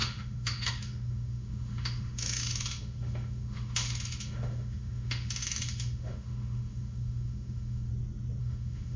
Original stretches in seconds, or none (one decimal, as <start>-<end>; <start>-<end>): 7.9-8.4